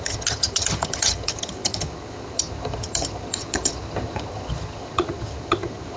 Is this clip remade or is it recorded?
remade